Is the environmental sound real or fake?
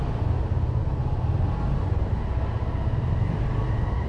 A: real